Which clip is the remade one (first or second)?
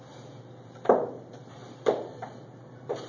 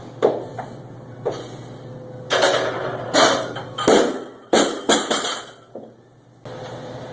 first